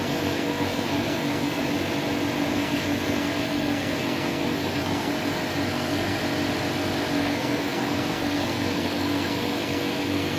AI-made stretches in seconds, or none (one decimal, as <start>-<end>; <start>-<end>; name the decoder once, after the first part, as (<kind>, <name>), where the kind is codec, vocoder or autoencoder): 0.0-1.6 (codec, SNAC); 2.5-5.1; 5.7-6.2; 7.2-10.4